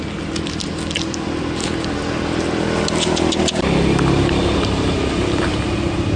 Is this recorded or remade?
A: recorded